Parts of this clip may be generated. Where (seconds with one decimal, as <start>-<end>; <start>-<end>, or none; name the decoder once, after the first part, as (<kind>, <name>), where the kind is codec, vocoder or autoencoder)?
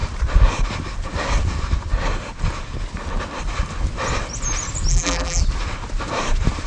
4.9-5.4 (vocoder, BigVGAN v2)